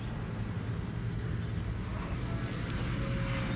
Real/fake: real